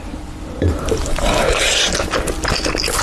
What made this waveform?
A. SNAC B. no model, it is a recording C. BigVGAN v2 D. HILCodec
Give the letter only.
B